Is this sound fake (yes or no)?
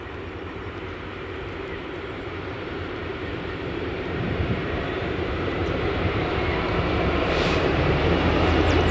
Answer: yes